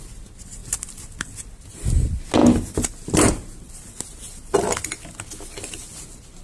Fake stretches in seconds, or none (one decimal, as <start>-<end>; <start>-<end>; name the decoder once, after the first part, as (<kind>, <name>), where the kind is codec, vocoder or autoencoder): none